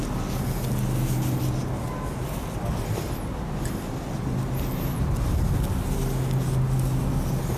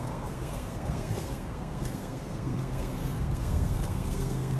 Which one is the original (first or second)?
first